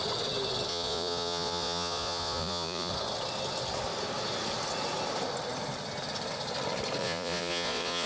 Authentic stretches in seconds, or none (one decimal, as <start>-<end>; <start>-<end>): 0.0-0.7; 2.9-7.0